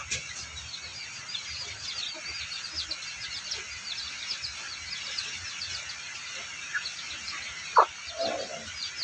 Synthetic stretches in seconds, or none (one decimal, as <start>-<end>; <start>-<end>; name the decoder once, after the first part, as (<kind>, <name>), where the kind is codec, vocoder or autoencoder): none